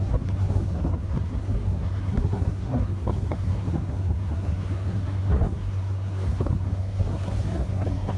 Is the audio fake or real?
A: fake